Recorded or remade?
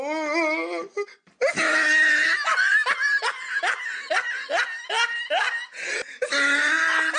recorded